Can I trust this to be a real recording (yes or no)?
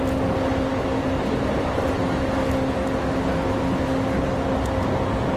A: yes